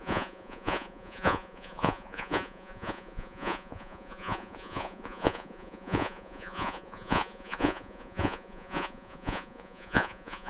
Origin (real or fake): fake